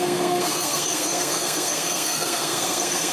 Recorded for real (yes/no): no